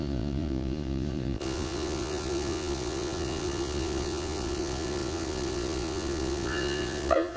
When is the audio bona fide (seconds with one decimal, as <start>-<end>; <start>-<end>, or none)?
none